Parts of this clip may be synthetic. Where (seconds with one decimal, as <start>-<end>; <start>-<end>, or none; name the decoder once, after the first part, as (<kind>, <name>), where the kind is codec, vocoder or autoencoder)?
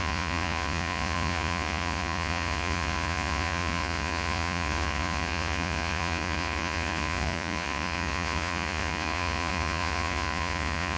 0.0-11.0 (vocoder, Vocos)